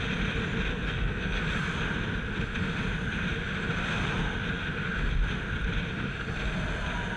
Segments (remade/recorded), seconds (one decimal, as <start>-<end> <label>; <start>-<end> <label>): 0.0-0.7 recorded; 0.7-1.4 remade; 1.4-7.2 recorded